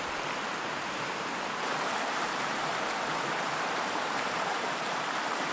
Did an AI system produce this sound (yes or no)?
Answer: yes